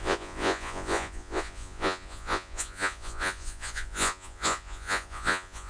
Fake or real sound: fake